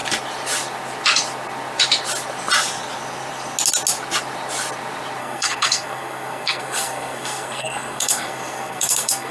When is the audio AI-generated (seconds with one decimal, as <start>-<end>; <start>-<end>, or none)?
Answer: 5.2-9.3